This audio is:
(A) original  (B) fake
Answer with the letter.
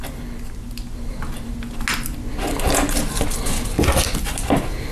A